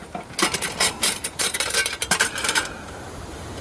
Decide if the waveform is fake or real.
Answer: fake